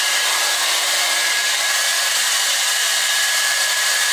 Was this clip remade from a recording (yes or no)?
yes